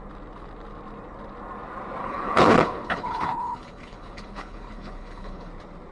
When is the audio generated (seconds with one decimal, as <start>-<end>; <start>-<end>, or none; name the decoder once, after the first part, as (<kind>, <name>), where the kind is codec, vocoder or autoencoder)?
2.0-5.5 (codec, HILCodec)